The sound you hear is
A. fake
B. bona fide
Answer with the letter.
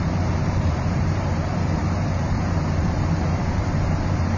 A